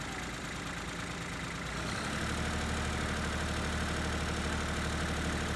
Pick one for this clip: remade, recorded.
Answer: recorded